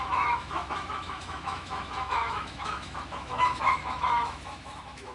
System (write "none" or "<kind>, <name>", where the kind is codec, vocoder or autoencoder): autoencoder, DAC-VAE